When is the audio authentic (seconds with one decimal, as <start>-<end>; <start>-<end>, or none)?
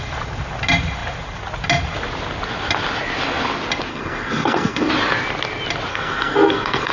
0.0-3.9; 4.9-5.9